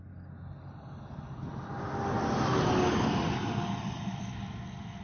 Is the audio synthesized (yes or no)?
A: no